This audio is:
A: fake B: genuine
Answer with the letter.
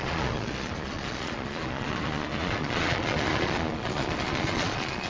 A